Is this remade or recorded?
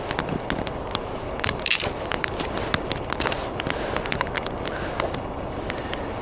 recorded